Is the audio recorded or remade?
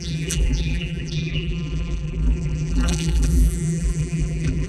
remade